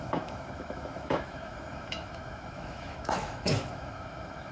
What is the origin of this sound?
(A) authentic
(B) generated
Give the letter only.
B